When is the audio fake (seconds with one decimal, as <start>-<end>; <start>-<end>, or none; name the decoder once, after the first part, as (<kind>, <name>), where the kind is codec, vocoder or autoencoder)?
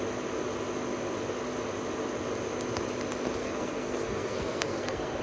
3.4-5.2 (codec, SNAC)